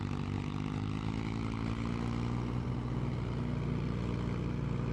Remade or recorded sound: recorded